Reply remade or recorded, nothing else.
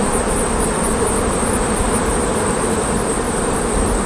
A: remade